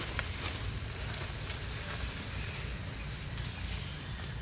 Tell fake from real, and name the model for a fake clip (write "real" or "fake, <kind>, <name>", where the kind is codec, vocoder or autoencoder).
real